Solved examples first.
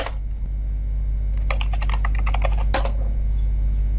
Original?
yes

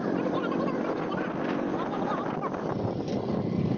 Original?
no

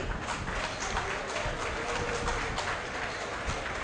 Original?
yes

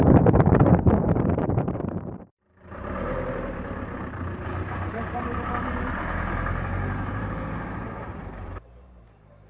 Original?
no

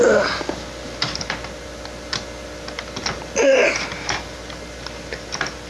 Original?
yes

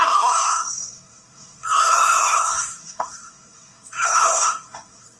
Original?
no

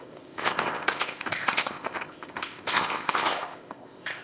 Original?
no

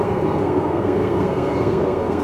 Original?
no